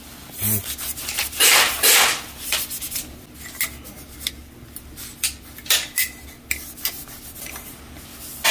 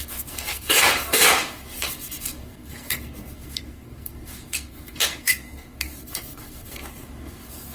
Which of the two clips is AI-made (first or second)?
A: second